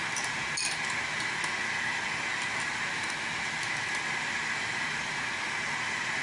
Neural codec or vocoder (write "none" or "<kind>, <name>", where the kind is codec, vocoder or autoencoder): none